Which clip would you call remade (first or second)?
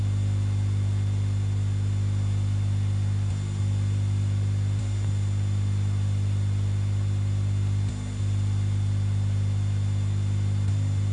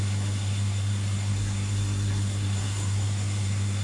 second